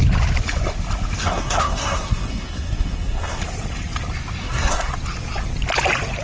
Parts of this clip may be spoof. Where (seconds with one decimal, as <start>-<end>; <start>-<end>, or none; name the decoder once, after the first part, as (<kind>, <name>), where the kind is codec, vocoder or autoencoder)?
1.2-3.4 (codec, SNAC); 4.4-4.9